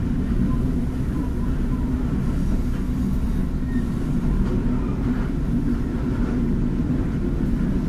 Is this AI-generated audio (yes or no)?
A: no